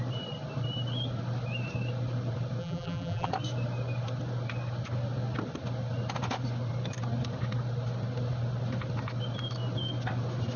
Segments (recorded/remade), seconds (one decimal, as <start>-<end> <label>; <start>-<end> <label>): 0.0-2.6 recorded; 2.6-3.3 remade; 3.3-10.6 recorded